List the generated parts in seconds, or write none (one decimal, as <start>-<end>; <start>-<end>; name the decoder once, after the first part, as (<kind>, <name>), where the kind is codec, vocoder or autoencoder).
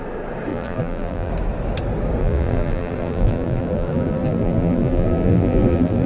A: 0.5-1.3 (vocoder, BigVGAN v2); 2.2-6.1